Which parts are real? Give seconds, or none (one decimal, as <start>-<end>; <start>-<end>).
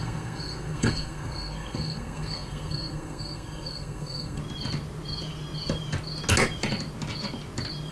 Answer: 4.4-7.9